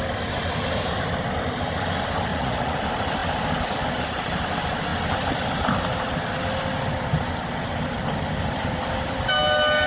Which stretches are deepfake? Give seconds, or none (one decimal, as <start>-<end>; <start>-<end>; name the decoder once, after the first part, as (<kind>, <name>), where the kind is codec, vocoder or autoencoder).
2.3-2.8 (vocoder, Vocos)